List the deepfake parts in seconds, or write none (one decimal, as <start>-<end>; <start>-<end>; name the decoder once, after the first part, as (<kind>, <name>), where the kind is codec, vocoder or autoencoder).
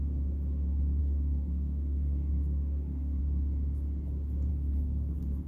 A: 1.0-3.2 (codec, SNAC); 4.5-5.5